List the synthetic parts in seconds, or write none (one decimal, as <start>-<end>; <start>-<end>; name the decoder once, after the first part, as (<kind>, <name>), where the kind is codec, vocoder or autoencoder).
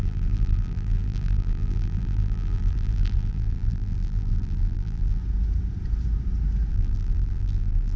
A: 0.0-5.2 (vocoder, BigVGAN v2); 6.7-8.0